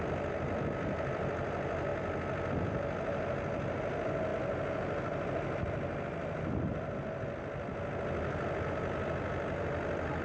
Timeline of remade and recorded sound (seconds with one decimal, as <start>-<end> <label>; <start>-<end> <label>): 0.0-10.2 recorded

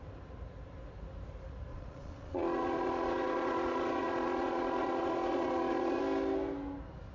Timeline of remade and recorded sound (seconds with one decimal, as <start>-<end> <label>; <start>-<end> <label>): 0.0-1.7 recorded; 1.7-6.0 remade; 6.0-7.1 recorded

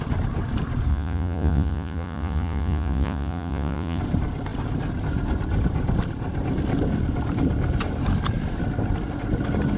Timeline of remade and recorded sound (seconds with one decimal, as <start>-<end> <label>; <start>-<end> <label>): 0.0-0.9 recorded; 0.9-4.0 remade; 4.0-9.8 recorded

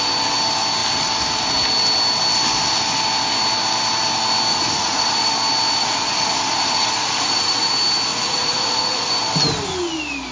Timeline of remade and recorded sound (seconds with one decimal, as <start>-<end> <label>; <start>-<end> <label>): 0.0-4.5 recorded; 4.5-5.3 remade; 5.3-5.8 recorded; 5.8-7.7 remade; 7.7-8.1 recorded; 8.1-9.1 remade; 9.1-10.3 recorded

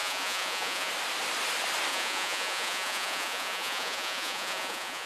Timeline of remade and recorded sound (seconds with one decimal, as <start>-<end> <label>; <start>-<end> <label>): 0.0-0.9 remade; 0.9-1.9 recorded; 1.9-5.1 remade

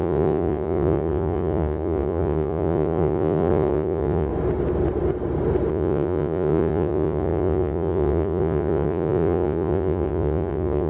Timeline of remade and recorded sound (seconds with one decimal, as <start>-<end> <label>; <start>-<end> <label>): 0.0-4.3 remade; 4.3-5.7 recorded; 5.7-10.9 remade

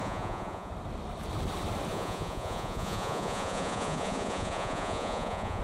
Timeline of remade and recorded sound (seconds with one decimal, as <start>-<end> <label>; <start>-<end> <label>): 0.0-0.7 remade; 0.7-1.9 recorded; 1.9-5.6 remade